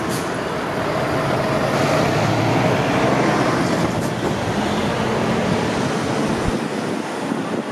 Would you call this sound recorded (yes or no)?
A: yes